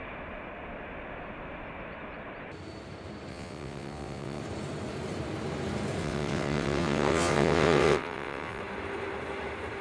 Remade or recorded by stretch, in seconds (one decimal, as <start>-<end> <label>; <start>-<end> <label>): 0.0-3.3 recorded; 3.3-4.4 remade; 4.4-6.0 recorded; 6.0-8.6 remade; 8.6-9.8 recorded